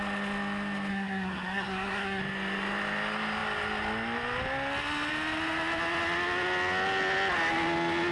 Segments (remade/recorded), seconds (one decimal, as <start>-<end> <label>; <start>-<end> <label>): 0.0-0.9 recorded; 0.9-2.2 remade; 2.2-8.1 recorded